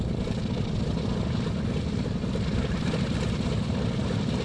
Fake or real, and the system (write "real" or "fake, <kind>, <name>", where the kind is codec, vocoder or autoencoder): real